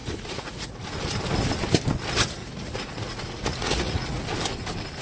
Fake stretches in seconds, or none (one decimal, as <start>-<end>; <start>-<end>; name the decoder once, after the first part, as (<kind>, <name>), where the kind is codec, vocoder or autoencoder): 0.0-0.8 (vocoder, Vocos); 2.4-4.2